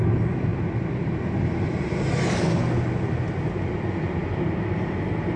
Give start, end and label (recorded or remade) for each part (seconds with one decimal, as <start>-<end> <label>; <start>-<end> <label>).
0.0-0.5 recorded; 0.5-1.3 remade; 1.3-5.4 recorded